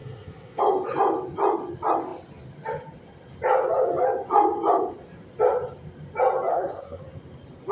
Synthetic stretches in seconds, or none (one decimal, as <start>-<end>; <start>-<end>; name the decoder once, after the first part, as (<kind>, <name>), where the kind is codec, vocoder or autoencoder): 0.0-0.6 (codec, SNAC); 6.5-7.0